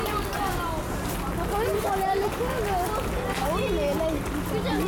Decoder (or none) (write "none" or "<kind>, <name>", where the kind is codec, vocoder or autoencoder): none